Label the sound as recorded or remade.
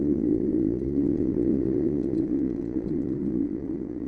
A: remade